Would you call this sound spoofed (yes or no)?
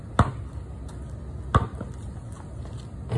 no